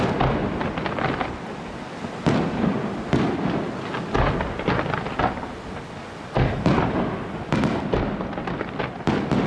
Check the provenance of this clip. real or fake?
real